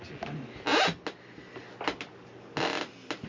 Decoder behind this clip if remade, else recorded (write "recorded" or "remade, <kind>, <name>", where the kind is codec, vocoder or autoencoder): recorded